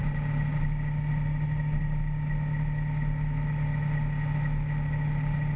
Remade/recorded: recorded